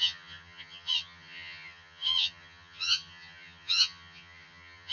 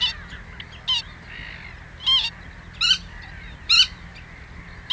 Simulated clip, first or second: first